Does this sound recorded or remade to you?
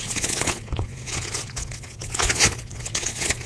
remade